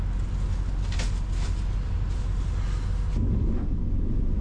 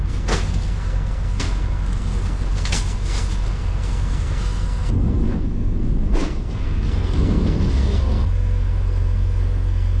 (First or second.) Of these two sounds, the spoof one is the second